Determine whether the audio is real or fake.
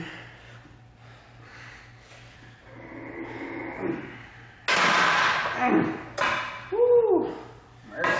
real